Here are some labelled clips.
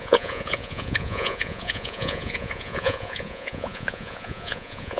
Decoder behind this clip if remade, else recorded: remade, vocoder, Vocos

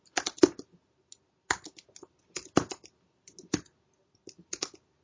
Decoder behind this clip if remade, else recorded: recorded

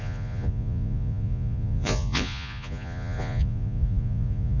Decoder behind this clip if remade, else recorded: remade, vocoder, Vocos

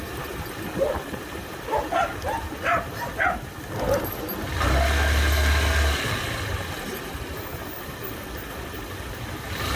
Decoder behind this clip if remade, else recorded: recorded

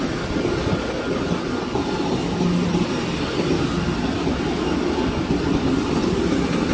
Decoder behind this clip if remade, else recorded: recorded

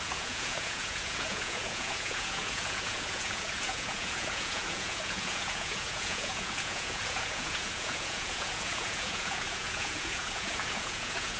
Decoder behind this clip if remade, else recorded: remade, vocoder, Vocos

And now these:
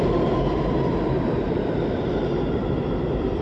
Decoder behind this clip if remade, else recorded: recorded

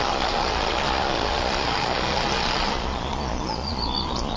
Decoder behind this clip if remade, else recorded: remade, vocoder, Vocos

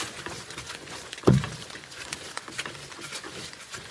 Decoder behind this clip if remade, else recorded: remade, vocoder, Vocos